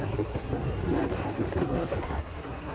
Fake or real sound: fake